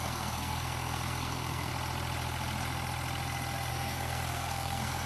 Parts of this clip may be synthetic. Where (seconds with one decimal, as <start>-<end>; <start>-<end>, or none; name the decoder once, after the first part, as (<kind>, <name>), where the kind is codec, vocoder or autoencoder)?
0.0-1.7 (codec, SNAC); 3.7-5.1

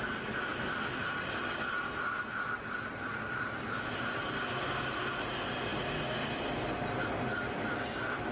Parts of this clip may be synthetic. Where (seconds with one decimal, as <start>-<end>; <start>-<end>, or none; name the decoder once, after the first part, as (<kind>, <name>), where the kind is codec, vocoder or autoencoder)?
none

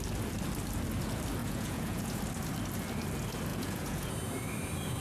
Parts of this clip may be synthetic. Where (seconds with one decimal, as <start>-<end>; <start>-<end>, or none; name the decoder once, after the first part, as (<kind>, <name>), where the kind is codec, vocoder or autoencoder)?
1.4-2.2 (vocoder, Vocos); 3.5-4.1

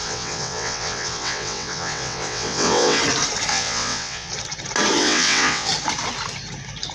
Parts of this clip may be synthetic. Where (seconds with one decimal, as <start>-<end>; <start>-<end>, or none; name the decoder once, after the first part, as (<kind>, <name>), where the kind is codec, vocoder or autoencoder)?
0.0-3.0 (vocoder, WaveNeXt); 3.5-4.3; 5.0-5.7